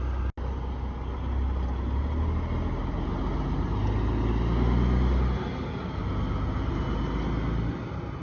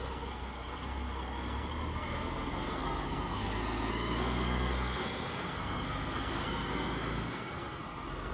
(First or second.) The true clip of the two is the first